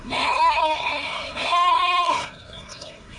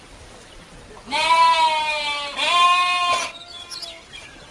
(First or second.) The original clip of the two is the second